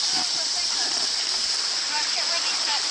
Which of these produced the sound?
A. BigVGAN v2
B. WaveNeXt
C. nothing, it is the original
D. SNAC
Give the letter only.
A